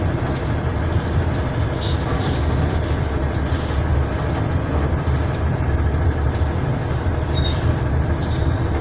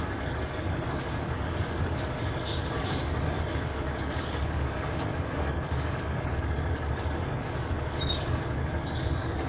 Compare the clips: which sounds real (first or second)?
first